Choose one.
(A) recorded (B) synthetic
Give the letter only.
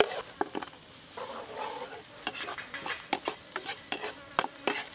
A